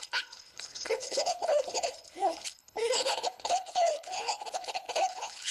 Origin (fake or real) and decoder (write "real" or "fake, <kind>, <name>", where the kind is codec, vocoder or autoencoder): fake, codec, HILCodec